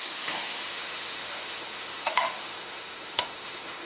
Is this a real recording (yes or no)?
no